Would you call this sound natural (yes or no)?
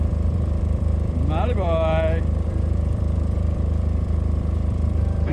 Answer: no